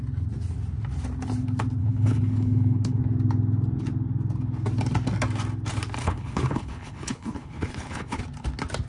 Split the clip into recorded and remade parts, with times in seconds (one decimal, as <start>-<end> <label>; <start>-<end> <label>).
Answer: 0.0-1.8 recorded; 1.8-3.0 remade; 3.0-6.0 recorded; 6.0-8.2 remade; 8.2-8.9 recorded